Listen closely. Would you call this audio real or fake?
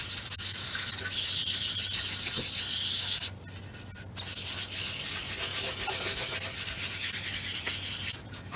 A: real